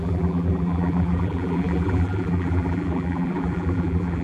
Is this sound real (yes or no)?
no